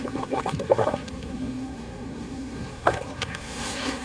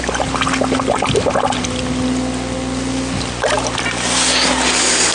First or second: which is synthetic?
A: first